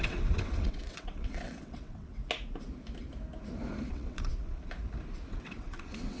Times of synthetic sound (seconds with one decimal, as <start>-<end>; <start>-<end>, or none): 0.0-2.2; 3.9-4.3; 5.3-6.2